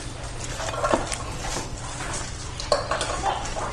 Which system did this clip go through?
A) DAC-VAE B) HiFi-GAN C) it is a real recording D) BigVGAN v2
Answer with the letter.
C